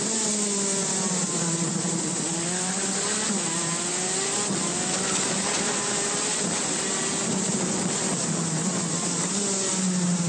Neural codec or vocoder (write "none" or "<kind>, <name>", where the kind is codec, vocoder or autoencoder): none